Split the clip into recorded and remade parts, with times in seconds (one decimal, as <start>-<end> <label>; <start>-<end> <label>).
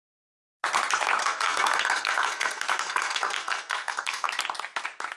0.0-1.2 recorded; 1.2-4.3 remade; 4.3-5.2 recorded